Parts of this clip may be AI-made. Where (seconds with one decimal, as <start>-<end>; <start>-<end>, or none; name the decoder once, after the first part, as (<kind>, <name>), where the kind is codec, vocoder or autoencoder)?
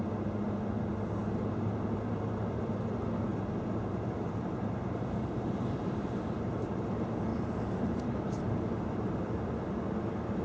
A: 1.2-2.6 (vocoder, BigVGAN v2); 3.3-6.7; 7.3-8.4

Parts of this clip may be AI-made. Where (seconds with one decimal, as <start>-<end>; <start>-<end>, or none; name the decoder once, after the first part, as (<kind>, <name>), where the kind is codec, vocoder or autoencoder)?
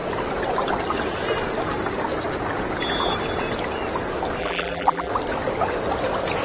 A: 4.4-5.1 (vocoder, BigVGAN v2)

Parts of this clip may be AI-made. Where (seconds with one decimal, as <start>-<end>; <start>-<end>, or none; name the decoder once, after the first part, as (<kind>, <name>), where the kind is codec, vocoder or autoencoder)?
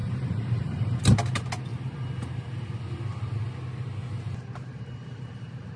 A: 0.0-1.0 (vocoder, BigVGAN v2)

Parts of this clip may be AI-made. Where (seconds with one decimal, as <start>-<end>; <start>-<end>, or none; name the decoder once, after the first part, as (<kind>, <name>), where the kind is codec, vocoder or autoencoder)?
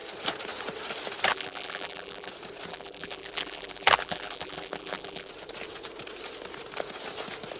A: 1.3-2.3 (vocoder, BigVGAN v2); 2.7-5.3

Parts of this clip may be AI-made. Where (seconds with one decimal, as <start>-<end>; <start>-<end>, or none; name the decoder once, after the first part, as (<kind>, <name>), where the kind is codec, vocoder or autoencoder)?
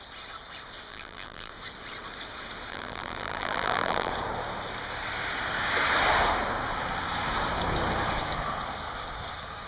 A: 0.9-1.5 (vocoder, BigVGAN v2); 2.7-4.1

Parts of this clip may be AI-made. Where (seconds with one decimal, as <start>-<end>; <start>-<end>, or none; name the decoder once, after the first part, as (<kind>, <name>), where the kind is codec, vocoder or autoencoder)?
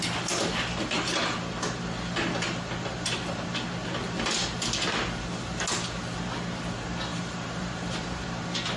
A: 7.1-8.3 (vocoder, BigVGAN v2)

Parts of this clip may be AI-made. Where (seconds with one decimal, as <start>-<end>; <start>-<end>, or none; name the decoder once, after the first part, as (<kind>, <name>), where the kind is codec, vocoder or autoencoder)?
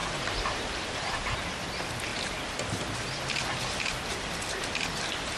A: 0.0-1.5 (vocoder, BigVGAN v2)